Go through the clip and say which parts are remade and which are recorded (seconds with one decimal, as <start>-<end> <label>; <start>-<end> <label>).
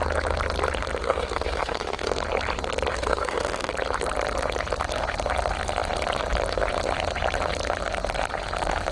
0.0-1.0 recorded; 1.0-2.1 remade; 2.1-2.9 recorded; 2.9-3.7 remade; 3.7-8.9 recorded